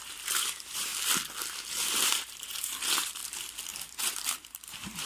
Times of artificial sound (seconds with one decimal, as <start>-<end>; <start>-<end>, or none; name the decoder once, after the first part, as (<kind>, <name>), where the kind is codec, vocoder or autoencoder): 0.0-0.9 (vocoder, BigVGAN v2); 1.7-3.2; 4.0-5.1